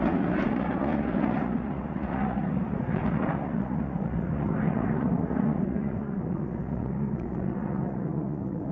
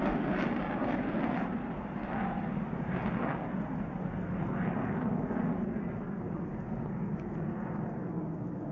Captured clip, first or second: second